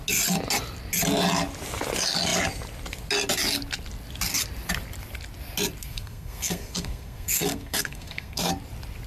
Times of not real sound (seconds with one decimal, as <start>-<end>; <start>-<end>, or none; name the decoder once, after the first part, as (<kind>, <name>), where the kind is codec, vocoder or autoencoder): 5.8-8.5 (codec, SNAC)